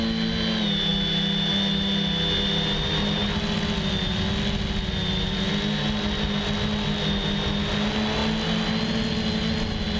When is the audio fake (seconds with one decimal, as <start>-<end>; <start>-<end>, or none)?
none